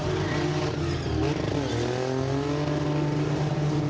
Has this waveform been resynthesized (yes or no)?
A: no